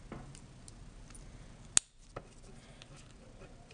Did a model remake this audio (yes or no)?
no